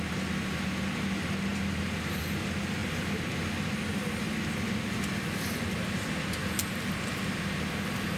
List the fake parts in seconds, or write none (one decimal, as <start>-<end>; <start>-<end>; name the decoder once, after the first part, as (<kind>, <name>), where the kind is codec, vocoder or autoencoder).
1.5-2.2 (vocoder, BigVGAN v2)

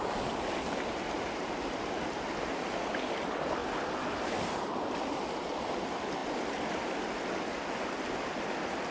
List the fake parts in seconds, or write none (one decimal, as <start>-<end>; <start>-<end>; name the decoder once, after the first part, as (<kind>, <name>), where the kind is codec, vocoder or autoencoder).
none

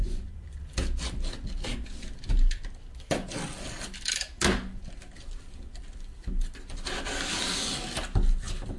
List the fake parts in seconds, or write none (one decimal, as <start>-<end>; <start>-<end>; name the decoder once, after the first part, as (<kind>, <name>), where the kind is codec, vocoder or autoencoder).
0.0-0.6 (vocoder, Vocos)

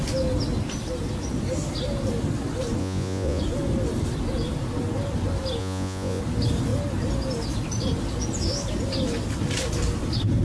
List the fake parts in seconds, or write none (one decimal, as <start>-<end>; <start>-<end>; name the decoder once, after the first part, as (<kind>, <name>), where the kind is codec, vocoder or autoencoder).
2.8-3.4 (vocoder, Vocos); 5.6-6.2

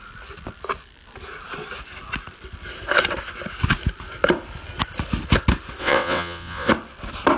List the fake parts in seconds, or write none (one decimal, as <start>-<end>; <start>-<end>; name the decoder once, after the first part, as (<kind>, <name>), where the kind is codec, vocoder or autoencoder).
5.8-6.7 (vocoder, WaveNeXt)

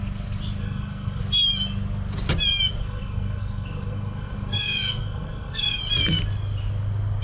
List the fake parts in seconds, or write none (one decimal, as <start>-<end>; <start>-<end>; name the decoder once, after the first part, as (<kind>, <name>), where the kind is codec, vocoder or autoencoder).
0.6-1.2 (codec, SNAC); 2.8-5.8